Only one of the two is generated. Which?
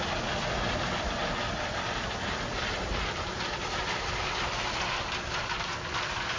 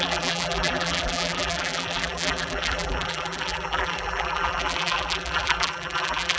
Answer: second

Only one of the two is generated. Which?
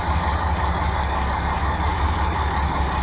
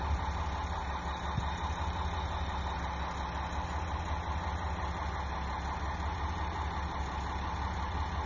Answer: first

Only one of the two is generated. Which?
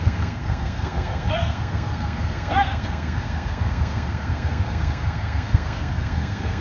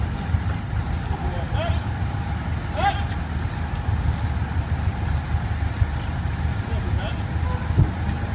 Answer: first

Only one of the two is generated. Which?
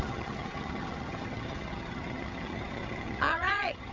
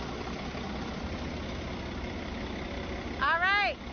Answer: first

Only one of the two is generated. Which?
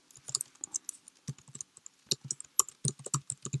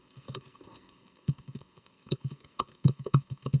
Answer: second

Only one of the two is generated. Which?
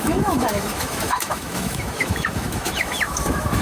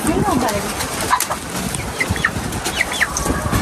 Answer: first